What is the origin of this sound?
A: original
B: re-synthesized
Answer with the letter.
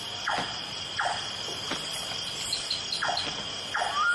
A